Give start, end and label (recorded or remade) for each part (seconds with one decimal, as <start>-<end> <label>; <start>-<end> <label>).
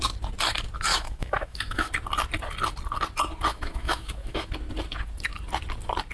0.0-0.9 recorded; 0.9-1.9 remade; 1.9-3.5 recorded; 3.5-4.5 remade; 4.5-6.1 recorded